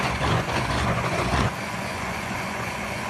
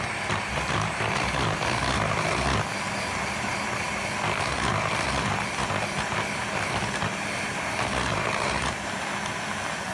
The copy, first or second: first